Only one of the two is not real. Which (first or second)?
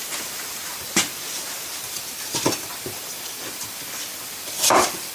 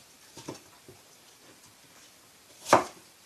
first